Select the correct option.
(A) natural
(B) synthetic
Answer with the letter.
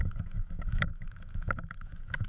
B